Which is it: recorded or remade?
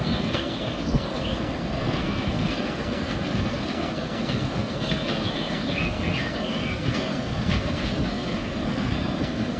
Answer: remade